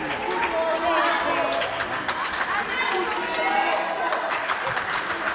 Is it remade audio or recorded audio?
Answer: recorded